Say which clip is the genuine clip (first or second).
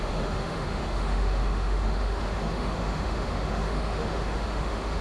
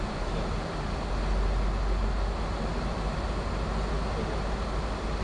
second